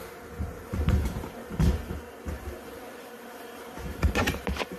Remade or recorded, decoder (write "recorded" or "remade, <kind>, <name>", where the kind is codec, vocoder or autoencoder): recorded